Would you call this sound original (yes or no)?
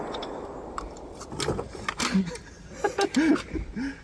yes